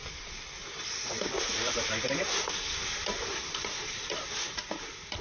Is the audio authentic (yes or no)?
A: yes